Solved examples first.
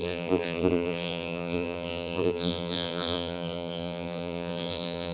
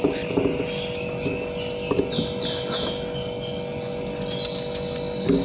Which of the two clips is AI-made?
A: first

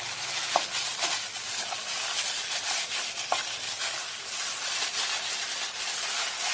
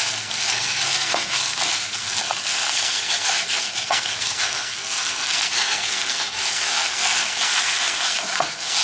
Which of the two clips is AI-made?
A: second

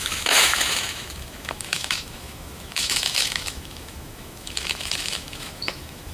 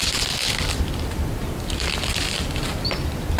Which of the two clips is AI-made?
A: first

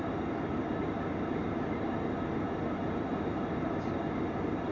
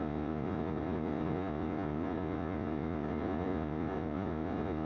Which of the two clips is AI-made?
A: second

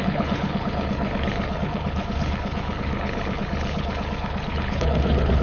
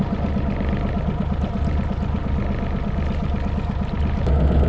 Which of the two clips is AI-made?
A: first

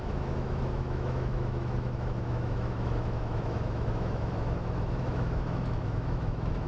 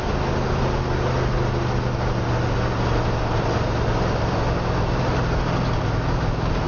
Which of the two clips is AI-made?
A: first